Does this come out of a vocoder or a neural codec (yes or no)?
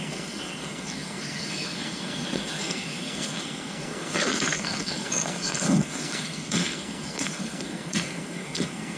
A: yes